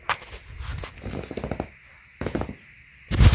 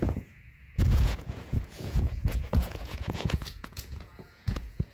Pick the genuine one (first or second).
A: first